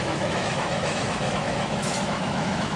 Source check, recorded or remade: remade